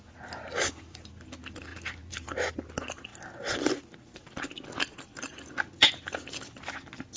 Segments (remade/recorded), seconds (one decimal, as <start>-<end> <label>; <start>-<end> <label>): 0.0-7.2 recorded